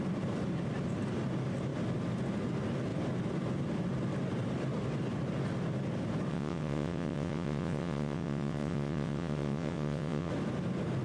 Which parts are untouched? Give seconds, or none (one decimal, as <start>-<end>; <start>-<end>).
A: 0.0-6.3; 10.3-11.0